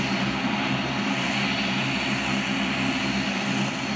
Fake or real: real